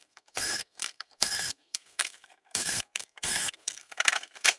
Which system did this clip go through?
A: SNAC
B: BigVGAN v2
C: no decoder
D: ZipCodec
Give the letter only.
A